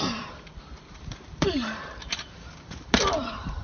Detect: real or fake fake